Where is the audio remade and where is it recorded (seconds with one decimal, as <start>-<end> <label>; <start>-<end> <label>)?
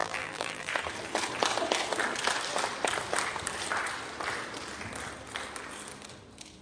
0.0-0.7 remade; 0.7-6.6 recorded